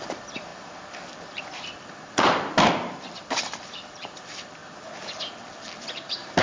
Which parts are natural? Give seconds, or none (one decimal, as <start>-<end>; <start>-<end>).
4.6-5.3